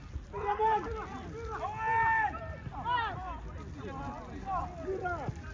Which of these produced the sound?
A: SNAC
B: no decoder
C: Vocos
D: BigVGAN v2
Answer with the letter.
B